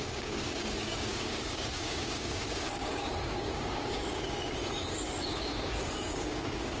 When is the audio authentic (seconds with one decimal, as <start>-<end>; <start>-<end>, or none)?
none